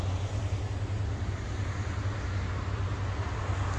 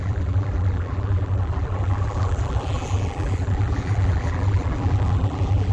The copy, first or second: second